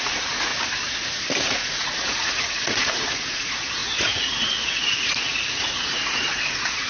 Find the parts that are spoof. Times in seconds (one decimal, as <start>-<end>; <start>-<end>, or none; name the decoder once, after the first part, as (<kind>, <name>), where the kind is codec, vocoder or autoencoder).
0.0-0.5 (vocoder, Vocos); 1.4-6.9